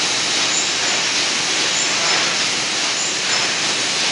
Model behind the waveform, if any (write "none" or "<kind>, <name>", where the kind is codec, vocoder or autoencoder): none